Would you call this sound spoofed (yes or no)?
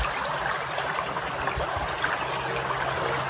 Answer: no